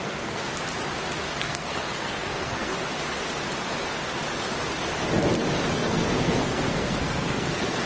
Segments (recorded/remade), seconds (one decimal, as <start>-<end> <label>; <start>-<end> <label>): 0.0-0.4 remade; 0.4-1.4 recorded; 1.4-2.7 remade; 2.7-5.7 recorded; 5.7-7.9 remade